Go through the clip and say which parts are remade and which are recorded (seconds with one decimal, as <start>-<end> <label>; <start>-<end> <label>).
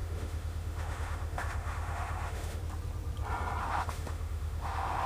0.0-2.6 remade; 2.6-3.6 recorded; 3.6-5.1 remade